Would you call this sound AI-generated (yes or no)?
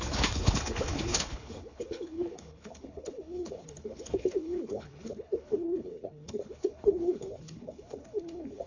yes